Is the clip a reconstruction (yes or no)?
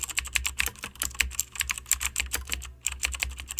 no